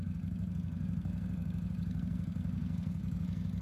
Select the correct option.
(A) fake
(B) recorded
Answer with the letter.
A